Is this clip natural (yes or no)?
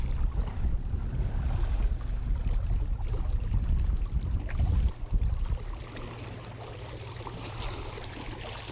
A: yes